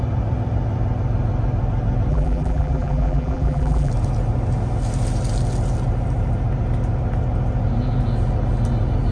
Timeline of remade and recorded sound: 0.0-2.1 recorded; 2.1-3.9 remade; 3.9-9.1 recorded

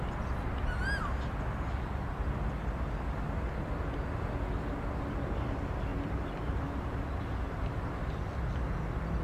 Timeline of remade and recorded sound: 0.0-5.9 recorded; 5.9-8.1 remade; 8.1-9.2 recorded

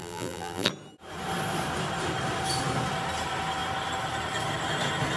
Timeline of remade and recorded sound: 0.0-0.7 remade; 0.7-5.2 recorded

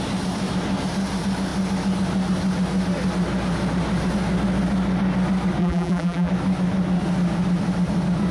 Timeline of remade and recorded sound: 0.0-5.6 recorded; 5.6-6.3 remade; 6.3-8.3 recorded